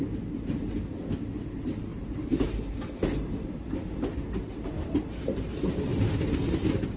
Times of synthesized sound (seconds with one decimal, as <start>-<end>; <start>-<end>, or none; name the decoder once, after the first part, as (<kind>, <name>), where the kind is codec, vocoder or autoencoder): none